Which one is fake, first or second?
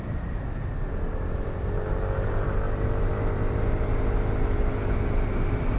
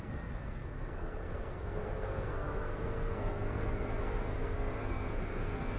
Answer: second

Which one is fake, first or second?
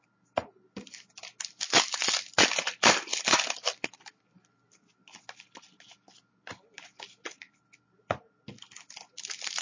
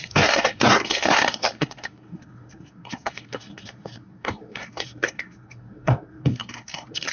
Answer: second